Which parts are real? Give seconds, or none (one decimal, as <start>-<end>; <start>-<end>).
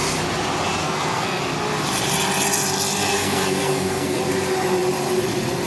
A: 0.0-0.8; 1.4-3.1; 4.2-5.7